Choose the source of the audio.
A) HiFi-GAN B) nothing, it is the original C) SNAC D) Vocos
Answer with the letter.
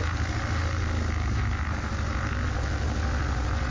B